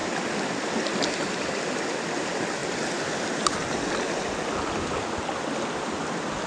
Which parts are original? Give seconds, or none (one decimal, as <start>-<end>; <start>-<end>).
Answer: 0.0-6.5